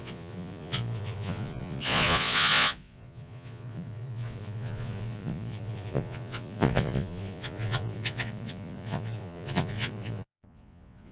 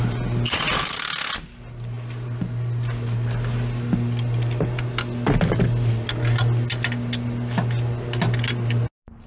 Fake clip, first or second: first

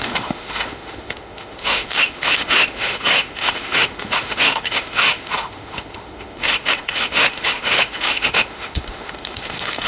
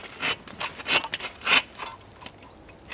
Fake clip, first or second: first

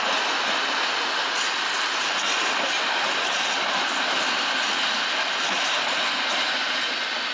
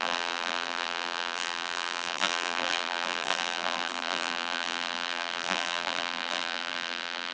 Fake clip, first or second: second